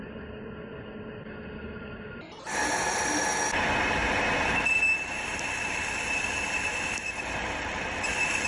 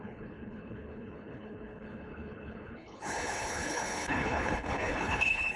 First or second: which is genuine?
first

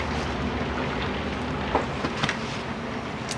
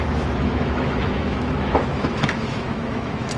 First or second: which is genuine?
first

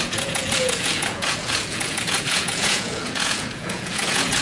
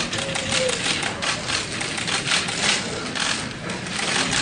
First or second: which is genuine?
second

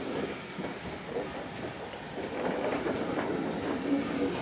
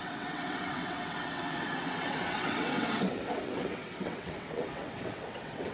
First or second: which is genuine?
first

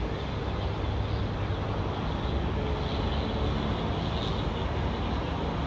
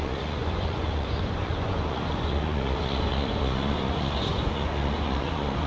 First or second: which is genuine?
first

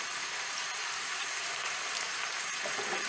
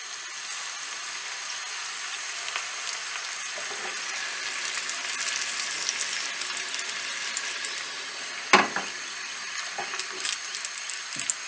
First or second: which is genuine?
second